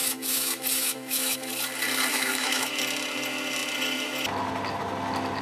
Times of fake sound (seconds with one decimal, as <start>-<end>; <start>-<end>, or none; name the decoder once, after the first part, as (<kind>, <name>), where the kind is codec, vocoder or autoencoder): 0.0-1.5 (autoencoder, DAC-VAE); 2.1-2.7